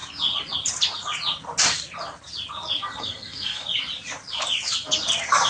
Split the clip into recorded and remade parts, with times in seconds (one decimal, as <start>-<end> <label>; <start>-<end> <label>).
0.0-3.0 recorded; 3.0-3.7 remade; 3.7-5.5 recorded